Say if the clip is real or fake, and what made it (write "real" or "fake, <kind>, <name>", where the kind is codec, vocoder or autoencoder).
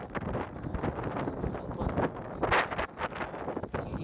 real